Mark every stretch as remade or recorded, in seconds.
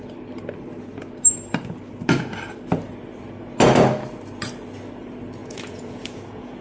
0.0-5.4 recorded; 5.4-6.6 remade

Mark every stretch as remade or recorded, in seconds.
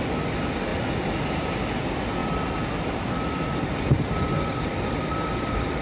0.0-0.7 remade; 0.7-1.8 recorded; 1.8-5.8 remade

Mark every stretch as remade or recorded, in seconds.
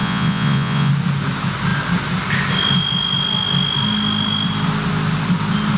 0.0-0.9 remade; 0.9-5.8 recorded